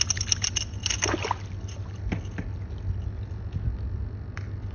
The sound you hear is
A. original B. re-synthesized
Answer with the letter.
A